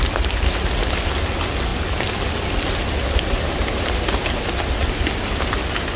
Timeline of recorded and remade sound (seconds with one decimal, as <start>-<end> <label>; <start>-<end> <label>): 0.0-6.0 recorded